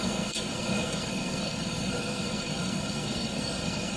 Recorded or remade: remade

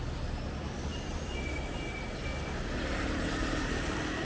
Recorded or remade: recorded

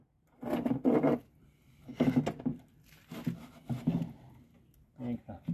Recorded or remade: recorded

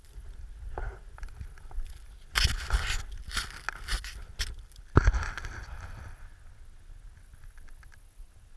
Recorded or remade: recorded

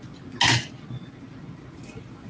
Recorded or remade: recorded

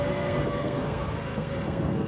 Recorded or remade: remade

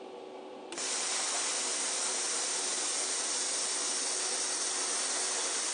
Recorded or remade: recorded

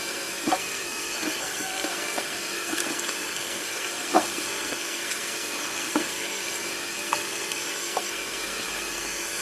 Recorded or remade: remade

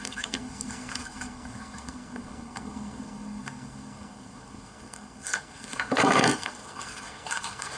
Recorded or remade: remade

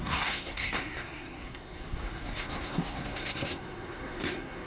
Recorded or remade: remade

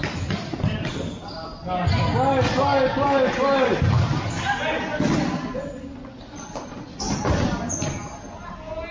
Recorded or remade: recorded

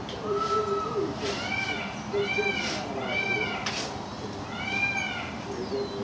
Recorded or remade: recorded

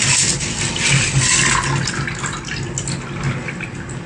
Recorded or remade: recorded